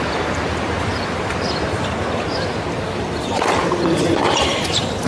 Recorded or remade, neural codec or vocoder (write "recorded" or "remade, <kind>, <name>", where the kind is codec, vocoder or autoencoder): remade, vocoder, BigVGAN v2